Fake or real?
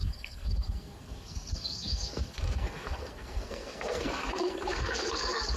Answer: fake